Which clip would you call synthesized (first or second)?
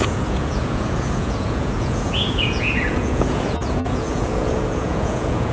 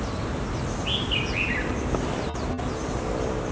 first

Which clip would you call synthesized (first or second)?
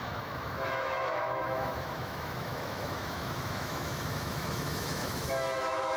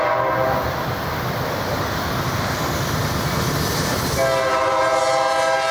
first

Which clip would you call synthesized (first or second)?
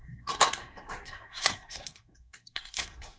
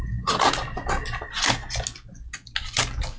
first